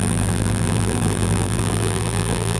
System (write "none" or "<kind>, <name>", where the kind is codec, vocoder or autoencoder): vocoder, BigVGAN v2